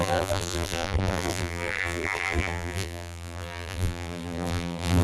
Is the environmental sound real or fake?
fake